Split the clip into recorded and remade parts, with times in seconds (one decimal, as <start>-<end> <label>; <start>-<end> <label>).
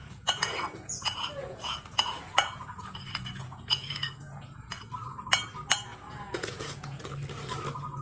0.0-4.8 remade; 4.8-5.9 recorded; 5.9-7.1 remade; 7.1-8.0 recorded